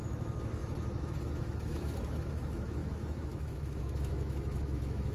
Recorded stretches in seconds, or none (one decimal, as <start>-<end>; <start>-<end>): none